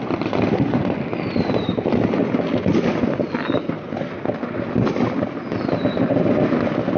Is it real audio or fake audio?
real